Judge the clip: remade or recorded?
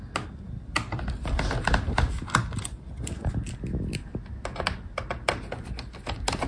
recorded